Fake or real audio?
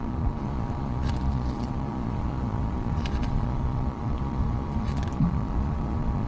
fake